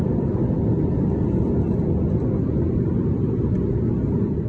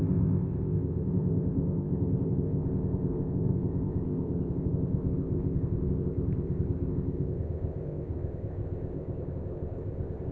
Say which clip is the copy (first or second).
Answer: second